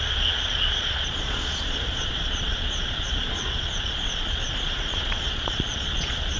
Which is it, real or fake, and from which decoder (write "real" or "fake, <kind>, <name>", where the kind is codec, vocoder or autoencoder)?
fake, vocoder, Vocos